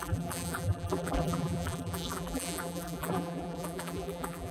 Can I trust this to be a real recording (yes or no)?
no